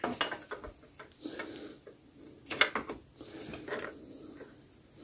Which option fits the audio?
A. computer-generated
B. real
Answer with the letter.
B